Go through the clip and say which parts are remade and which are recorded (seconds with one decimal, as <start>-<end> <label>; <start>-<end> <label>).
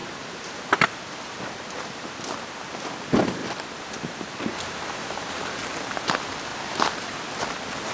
0.0-2.5 remade; 2.5-3.4 recorded; 3.4-4.4 remade; 4.4-6.5 recorded; 6.5-7.4 remade; 7.4-7.9 recorded